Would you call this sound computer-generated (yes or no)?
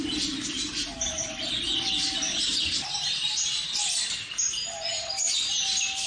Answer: no